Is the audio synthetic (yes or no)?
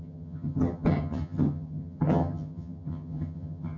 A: yes